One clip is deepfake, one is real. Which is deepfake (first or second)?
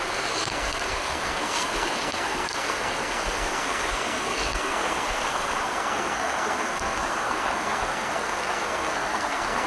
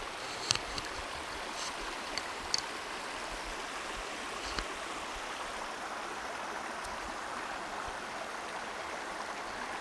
first